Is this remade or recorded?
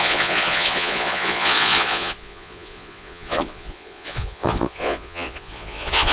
remade